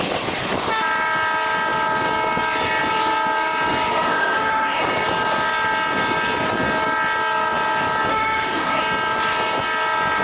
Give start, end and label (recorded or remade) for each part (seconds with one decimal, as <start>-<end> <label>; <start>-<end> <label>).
0.0-3.9 recorded; 3.9-4.8 remade; 4.8-8.1 recorded; 8.1-8.8 remade; 8.8-10.2 recorded